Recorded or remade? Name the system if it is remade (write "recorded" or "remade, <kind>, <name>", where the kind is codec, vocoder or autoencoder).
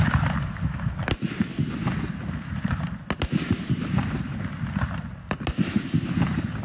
recorded